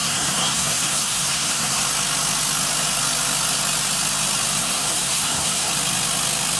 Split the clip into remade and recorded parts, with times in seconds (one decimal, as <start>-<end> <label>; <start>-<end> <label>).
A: 0.0-1.8 remade; 1.8-4.6 recorded; 4.6-5.7 remade; 5.7-6.6 recorded